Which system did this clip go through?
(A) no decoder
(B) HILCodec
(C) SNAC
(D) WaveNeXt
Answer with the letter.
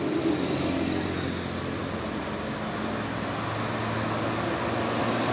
A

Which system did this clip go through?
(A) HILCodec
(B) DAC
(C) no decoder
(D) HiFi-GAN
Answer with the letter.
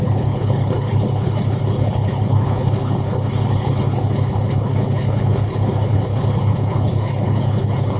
A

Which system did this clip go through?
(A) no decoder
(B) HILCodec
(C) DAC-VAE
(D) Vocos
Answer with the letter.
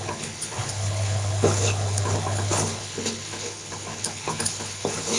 B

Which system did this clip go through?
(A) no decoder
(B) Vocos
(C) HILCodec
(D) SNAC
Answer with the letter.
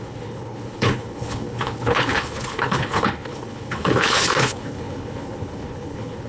C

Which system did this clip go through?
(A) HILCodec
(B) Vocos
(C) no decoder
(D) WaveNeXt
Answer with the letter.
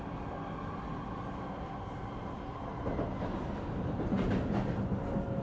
C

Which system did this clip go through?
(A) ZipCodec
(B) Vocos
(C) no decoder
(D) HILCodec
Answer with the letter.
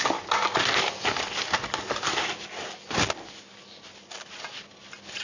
C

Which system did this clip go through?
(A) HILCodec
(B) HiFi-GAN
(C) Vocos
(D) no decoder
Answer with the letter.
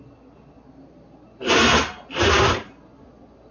D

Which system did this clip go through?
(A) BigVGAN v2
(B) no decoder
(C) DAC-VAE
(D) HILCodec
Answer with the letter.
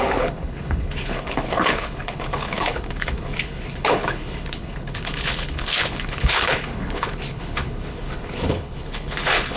D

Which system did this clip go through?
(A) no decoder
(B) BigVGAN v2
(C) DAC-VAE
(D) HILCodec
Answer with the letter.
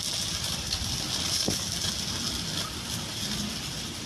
A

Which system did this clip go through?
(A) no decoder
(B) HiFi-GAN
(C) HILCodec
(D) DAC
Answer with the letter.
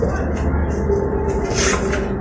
A